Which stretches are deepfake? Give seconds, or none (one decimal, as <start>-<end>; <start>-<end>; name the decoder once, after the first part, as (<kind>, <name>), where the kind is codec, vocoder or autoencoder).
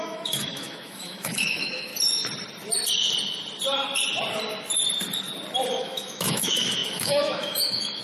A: 0.0-1.9 (autoencoder, DAC-VAE); 5.8-8.0